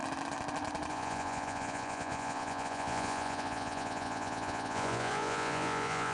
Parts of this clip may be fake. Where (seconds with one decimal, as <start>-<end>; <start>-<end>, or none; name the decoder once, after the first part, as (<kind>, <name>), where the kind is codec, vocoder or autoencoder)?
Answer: 0.9-6.1 (vocoder, Vocos)